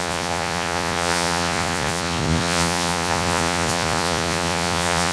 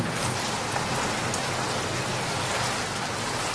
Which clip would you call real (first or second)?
second